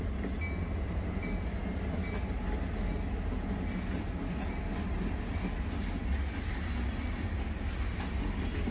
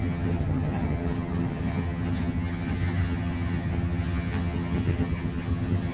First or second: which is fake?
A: second